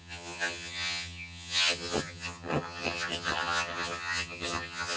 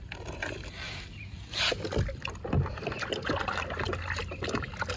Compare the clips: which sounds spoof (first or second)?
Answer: first